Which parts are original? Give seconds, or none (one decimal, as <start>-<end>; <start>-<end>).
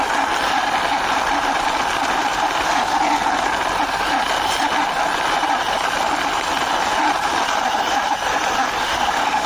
0.0-8.8